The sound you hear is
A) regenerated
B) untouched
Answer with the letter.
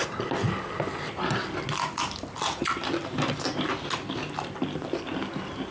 B